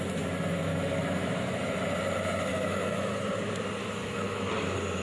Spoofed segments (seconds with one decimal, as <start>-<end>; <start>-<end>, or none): 0.7-1.7; 2.5-3.3; 3.8-4.5